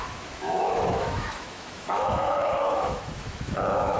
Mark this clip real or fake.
fake